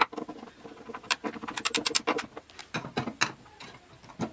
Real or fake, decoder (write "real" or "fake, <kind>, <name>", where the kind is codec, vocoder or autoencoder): real